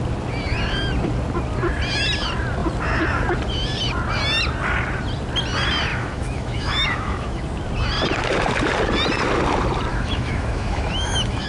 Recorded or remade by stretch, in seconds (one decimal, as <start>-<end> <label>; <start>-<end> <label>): 0.0-5.9 recorded; 5.9-7.4 remade; 7.4-9.9 recorded; 9.9-11.5 remade